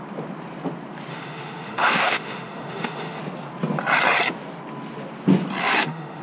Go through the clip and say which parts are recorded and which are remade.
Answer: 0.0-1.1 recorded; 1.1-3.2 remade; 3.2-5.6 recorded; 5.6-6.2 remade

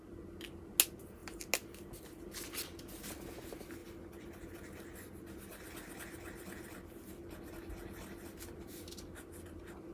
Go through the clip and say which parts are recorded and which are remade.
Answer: 0.0-9.9 recorded

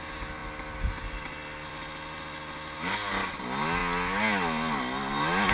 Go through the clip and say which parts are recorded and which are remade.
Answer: 0.0-5.5 recorded

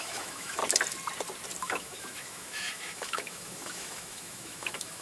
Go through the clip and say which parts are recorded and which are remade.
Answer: 0.0-0.6 remade; 0.6-1.6 recorded; 1.6-5.0 remade